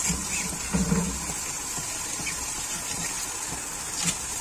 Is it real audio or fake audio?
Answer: real